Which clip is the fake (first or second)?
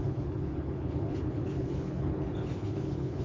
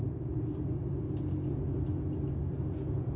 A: first